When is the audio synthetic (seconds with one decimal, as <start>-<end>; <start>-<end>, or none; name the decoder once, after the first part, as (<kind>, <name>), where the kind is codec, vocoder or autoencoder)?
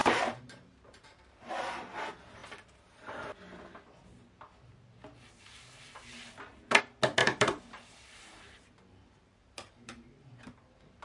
0.0-1.5 (vocoder, BigVGAN v2); 7.2-11.0